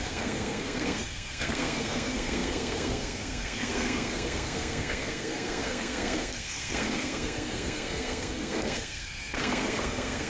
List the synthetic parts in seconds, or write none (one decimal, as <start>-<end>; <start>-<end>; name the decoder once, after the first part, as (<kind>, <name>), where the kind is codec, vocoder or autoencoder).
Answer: 0.0-10.3 (codec, SNAC)